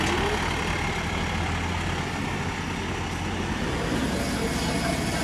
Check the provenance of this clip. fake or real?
real